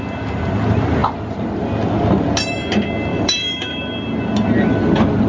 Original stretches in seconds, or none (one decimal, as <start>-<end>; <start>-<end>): 0.0-3.1; 3.8-5.3